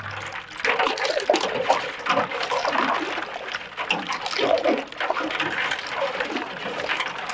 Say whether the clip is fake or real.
real